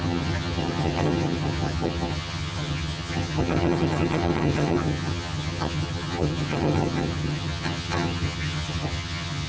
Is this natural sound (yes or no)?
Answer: no